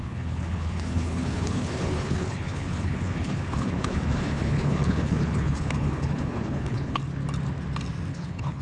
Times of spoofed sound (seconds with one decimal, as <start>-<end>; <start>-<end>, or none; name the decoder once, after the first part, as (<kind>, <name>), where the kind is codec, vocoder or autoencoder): 0.0-7.0 (codec, HILCodec); 8.1-8.6